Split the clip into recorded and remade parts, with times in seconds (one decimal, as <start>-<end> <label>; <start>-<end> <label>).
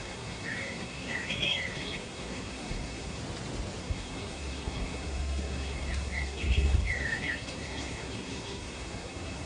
0.0-3.2 remade; 3.2-3.8 recorded; 3.8-9.5 remade